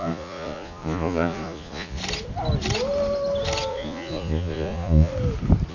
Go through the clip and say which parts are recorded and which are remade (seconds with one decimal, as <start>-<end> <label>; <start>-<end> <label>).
0.0-2.0 remade; 2.0-3.7 recorded; 3.7-5.1 remade; 5.1-5.7 recorded